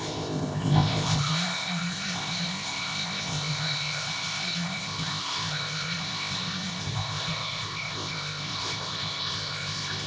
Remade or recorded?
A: remade